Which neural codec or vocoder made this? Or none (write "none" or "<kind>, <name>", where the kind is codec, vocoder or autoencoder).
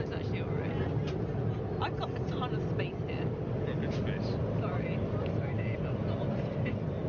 none